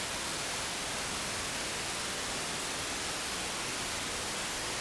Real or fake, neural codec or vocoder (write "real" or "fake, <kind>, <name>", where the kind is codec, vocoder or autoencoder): real